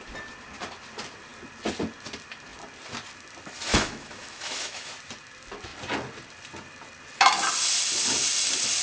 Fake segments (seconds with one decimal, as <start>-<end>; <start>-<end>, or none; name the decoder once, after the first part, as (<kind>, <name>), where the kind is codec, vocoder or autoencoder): 3.7-4.9 (autoencoder, DAC-VAE)